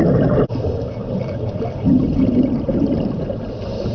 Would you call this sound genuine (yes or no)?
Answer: yes